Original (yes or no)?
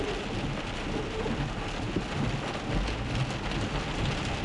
yes